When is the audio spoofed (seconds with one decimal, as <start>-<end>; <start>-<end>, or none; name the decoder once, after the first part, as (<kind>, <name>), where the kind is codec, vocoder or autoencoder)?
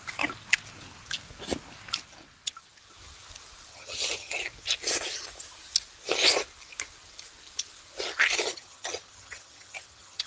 3.7-4.4 (vocoder, HiFi-GAN); 8.5-10.3